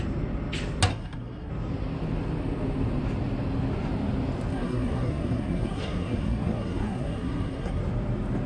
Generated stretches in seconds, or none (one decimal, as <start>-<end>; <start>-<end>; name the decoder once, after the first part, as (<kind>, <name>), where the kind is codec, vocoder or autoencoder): 0.9-1.5 (codec, SNAC); 4.5-7.8